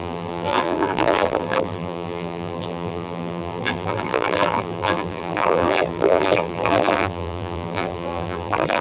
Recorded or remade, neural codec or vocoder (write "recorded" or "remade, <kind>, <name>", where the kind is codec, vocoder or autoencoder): remade, vocoder, BigVGAN v2